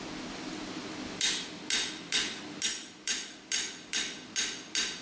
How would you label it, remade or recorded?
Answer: recorded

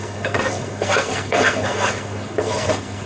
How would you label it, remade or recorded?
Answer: remade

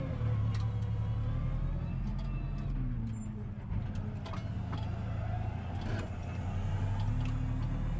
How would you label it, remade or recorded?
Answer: recorded